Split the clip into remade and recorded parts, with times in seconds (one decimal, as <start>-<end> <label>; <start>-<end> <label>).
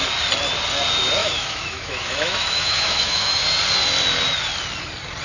0.0-1.2 recorded; 1.2-3.4 remade; 3.4-5.2 recorded